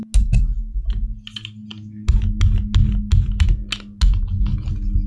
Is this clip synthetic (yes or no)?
no